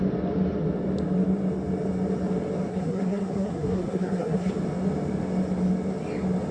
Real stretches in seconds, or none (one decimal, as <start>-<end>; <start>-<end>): 0.0-2.7; 4.5-6.5